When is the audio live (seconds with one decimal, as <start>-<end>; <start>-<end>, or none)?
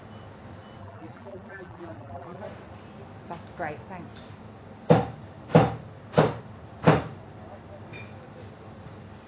0.0-0.8; 2.4-9.3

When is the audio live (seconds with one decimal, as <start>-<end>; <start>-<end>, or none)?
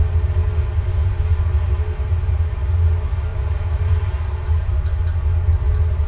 0.0-3.3; 4.7-6.1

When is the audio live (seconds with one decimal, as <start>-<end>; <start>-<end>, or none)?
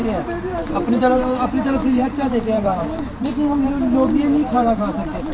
none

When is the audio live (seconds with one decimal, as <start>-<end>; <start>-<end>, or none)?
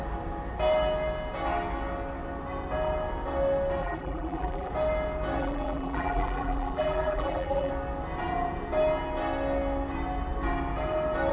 0.0-3.8; 4.7-5.4; 7.7-11.3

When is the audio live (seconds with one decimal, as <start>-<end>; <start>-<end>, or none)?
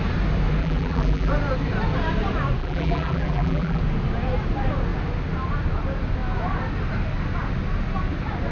0.0-0.6; 1.3-2.6; 3.8-8.5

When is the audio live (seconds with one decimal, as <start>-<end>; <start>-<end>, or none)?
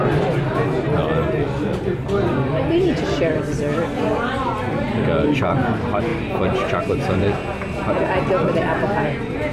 0.0-1.7; 5.3-6.1; 8.0-9.5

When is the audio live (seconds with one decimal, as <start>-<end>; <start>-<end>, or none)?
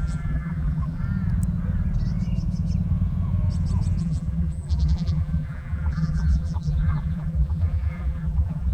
1.0-4.0